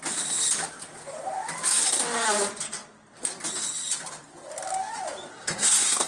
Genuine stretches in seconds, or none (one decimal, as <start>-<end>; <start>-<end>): 0.0-5.3